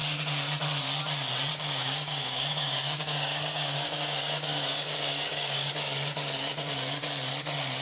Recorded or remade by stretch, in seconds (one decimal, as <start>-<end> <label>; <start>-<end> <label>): 0.0-1.5 recorded; 1.5-5.7 remade; 5.7-7.8 recorded